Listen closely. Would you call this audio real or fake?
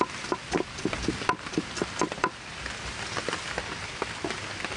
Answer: real